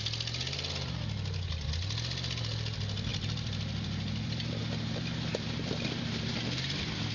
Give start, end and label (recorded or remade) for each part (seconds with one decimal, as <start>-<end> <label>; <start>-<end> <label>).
0.0-3.1 recorded; 3.1-4.6 remade; 4.6-5.3 recorded; 5.3-6.3 remade; 6.3-7.1 recorded